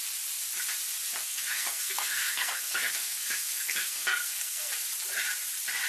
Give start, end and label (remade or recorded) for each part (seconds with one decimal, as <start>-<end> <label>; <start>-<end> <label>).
0.0-1.2 recorded; 1.2-4.7 remade; 4.7-5.9 recorded